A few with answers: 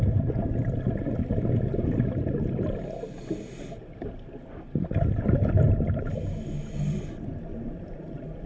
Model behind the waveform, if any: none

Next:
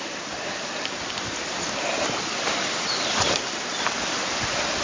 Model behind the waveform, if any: none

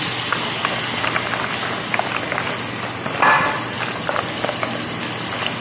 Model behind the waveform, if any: none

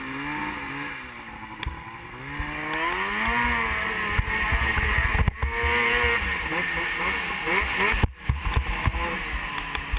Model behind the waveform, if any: none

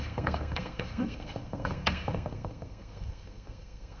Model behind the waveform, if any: codec, SNAC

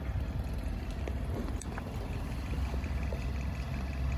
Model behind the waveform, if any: none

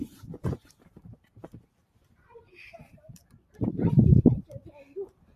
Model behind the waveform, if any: vocoder, BigVGAN v2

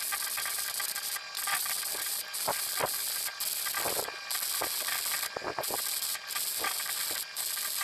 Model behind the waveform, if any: none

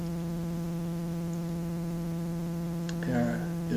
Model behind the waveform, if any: none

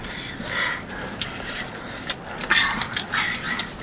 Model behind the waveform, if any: none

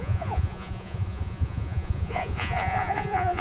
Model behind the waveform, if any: vocoder, Vocos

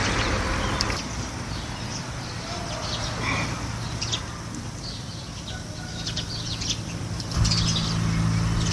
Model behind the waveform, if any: vocoder, BigVGAN v2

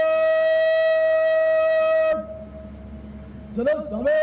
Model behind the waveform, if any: none